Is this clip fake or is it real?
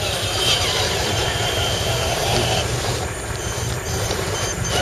fake